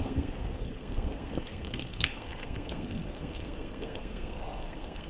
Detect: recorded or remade remade